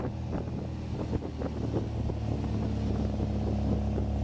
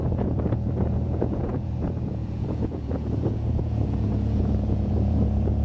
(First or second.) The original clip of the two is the first